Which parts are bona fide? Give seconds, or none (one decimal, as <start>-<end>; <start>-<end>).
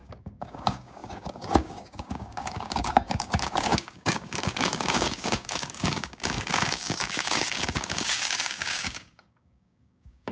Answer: none